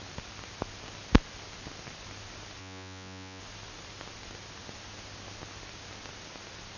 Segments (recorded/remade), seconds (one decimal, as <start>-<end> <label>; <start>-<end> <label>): 0.0-2.6 recorded; 2.6-3.4 remade; 3.4-6.8 recorded